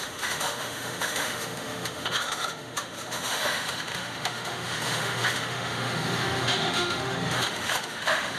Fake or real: fake